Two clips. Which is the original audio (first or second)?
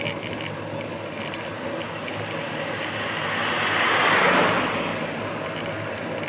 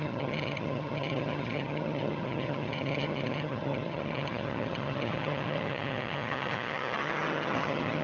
first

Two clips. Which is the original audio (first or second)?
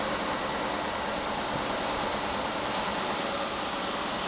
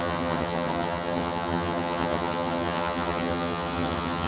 first